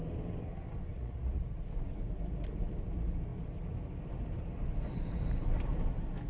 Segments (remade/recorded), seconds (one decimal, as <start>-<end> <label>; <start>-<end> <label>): 0.0-0.9 recorded; 0.9-1.4 remade; 1.4-6.3 recorded